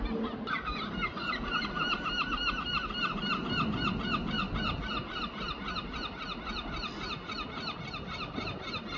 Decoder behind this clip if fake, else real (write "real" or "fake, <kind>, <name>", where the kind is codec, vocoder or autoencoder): real